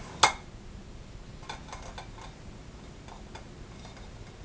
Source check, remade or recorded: recorded